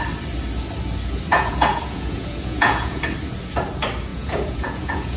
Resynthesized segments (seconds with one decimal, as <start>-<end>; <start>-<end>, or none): 1.3-3.0; 4.1-5.2